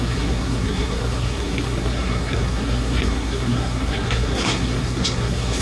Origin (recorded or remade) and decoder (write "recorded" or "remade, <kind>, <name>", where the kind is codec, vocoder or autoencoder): remade, codec, SNAC